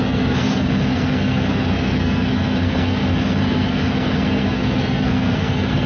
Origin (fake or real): fake